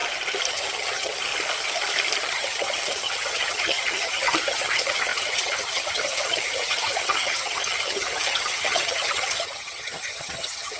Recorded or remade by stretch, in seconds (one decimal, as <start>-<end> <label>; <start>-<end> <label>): 0.0-0.5 recorded; 0.5-1.3 remade; 1.3-2.2 recorded; 2.2-10.8 remade